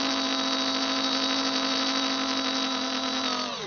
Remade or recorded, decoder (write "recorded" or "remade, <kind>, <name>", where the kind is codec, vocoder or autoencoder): recorded